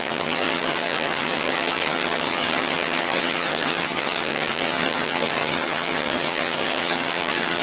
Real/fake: fake